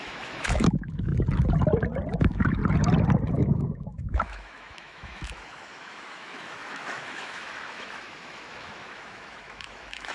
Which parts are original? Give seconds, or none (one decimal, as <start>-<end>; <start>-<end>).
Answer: 1.1-2.2; 2.6-3.3

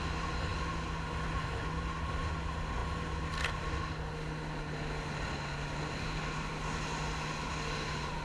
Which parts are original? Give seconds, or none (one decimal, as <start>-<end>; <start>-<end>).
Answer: 0.0-8.2

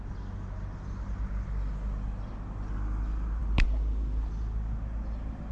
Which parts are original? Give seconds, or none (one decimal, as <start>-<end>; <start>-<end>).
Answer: 0.0-5.5

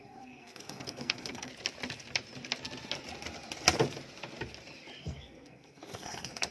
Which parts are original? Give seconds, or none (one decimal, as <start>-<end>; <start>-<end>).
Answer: 1.5-5.0

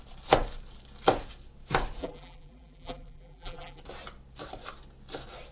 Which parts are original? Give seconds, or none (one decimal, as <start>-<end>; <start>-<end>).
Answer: 0.0-2.0; 3.8-5.5

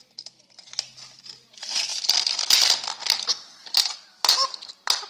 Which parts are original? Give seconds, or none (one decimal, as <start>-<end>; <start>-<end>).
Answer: 0.0-5.1

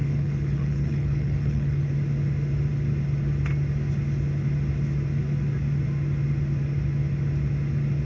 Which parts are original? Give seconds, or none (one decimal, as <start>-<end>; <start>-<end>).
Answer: 1.9-8.0

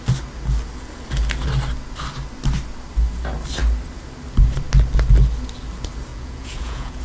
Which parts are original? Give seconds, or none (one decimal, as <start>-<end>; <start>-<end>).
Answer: 0.0-6.1